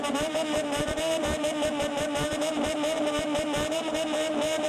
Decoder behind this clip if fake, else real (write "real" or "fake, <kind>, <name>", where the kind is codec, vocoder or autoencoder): fake, vocoder, BigVGAN v2